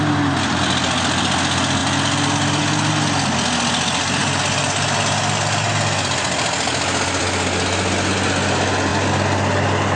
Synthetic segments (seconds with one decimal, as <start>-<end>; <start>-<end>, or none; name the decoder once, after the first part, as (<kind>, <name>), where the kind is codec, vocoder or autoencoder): none